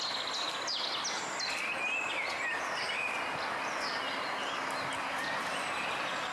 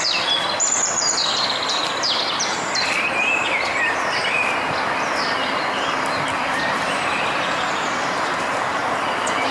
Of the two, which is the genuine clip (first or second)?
first